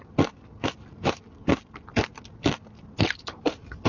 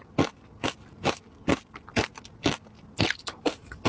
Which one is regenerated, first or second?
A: first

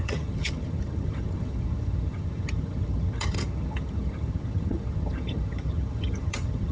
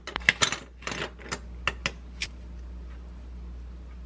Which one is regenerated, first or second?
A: first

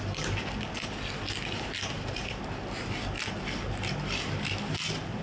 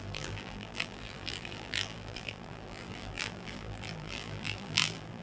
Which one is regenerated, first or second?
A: second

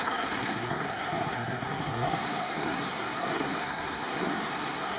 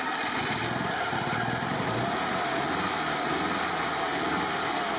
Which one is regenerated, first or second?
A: first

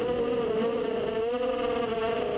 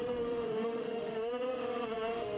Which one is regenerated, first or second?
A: second